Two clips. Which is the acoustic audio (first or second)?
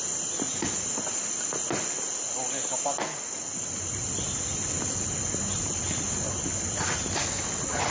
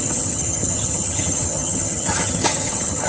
first